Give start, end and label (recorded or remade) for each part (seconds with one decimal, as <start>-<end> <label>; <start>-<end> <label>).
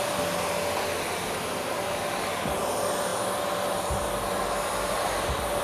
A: 0.0-5.6 recorded